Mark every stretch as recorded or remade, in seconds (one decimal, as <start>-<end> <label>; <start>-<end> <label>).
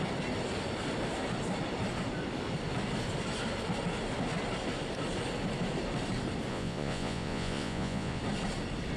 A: 0.0-6.5 recorded; 6.5-8.2 remade; 8.2-9.0 recorded